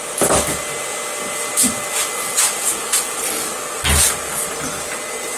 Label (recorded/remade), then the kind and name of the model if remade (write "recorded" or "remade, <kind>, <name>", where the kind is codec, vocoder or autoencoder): recorded